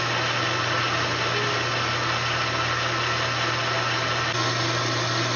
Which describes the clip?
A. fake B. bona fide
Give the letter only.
B